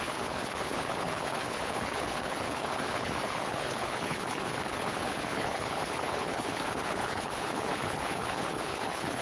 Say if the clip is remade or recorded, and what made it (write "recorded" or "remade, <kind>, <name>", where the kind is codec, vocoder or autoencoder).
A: remade, codec, HILCodec